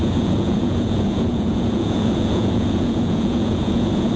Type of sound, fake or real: fake